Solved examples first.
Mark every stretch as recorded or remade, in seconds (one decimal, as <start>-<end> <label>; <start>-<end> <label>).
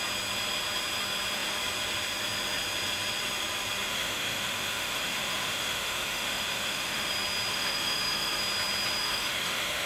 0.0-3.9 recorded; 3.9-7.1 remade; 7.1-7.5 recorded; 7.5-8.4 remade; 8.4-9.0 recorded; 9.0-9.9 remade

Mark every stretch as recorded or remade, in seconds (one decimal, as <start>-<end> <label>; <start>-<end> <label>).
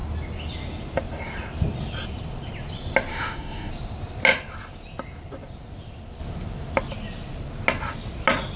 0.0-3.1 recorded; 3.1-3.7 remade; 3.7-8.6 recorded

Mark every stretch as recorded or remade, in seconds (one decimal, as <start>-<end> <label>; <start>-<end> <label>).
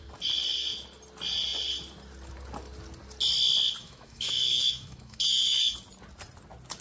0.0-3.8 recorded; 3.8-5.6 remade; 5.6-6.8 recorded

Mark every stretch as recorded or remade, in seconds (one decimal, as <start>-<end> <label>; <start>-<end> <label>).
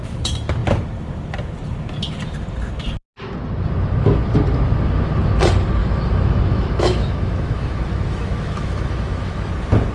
0.0-5.8 recorded; 5.8-9.5 remade; 9.5-9.9 recorded